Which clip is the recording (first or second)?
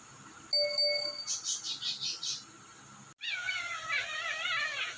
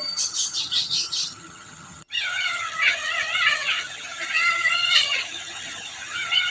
first